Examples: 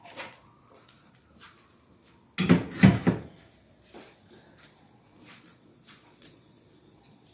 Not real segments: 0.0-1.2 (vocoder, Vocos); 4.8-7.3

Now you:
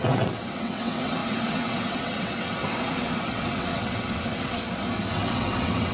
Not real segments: 0.0-4.6 (vocoder, WaveNeXt); 5.1-5.9

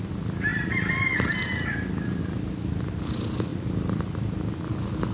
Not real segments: 0.5-2.2 (vocoder, BigVGAN v2); 3.5-4.5

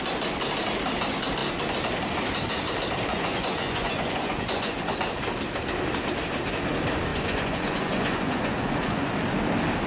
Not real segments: 3.1-4.9 (vocoder, Vocos); 7.1-9.1

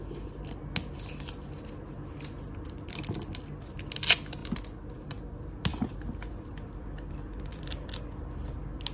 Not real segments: 5.7-7.1 (vocoder, BigVGAN v2); 7.5-8.0